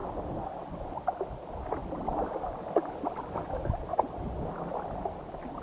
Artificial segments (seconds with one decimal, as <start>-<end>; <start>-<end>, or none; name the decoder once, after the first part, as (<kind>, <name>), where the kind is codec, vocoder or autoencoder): none